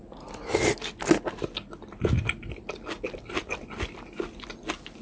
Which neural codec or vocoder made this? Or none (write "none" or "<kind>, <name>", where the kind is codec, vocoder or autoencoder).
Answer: none